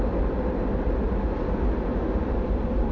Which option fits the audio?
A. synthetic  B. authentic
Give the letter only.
B